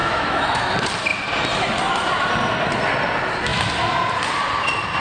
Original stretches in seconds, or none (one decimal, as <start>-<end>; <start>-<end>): 0.7-5.0